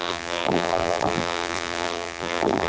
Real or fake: fake